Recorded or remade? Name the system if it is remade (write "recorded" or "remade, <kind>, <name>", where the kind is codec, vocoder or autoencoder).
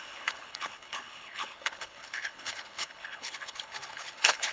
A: remade, codec, HILCodec